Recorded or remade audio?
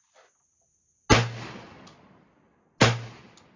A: recorded